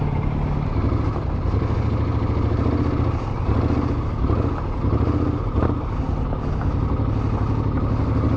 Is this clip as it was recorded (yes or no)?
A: yes